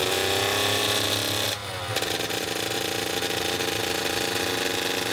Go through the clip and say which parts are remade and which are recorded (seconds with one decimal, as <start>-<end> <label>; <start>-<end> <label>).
0.0-5.1 recorded